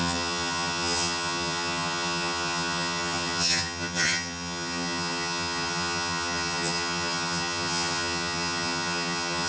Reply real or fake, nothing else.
fake